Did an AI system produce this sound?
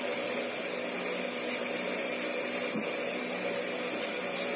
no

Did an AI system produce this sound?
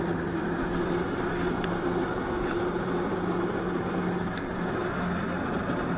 no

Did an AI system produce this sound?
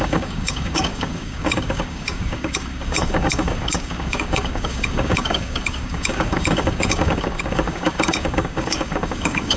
yes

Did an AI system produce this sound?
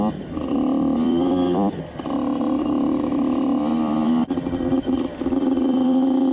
yes